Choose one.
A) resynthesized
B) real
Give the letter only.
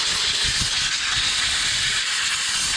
B